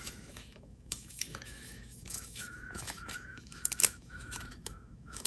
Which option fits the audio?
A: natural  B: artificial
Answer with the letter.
B